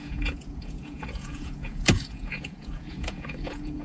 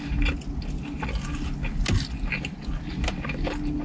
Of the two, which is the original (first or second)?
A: second